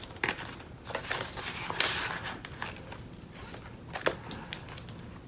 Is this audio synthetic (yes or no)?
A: no